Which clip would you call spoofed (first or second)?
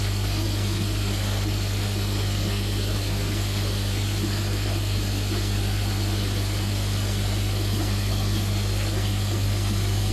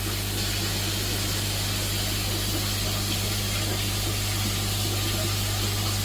first